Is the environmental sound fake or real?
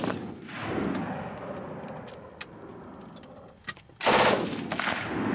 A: real